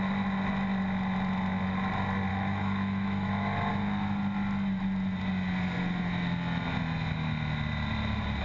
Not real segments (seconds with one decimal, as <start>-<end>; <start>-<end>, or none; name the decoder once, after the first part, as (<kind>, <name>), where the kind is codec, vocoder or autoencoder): 2.3-3.7 (autoencoder, DAC-VAE)